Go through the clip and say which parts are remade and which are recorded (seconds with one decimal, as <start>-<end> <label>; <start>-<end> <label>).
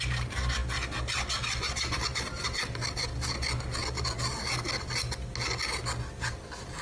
0.0-6.8 recorded